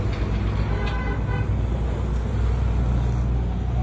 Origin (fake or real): real